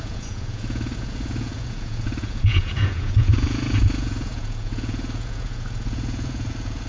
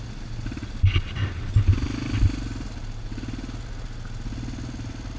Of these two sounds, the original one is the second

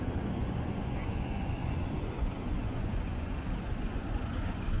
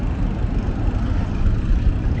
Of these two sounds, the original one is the second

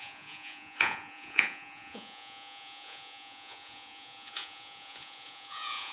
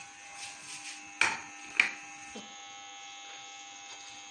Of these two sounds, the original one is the second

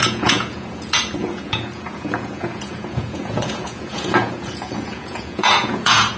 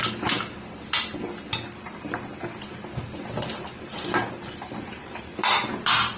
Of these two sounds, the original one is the second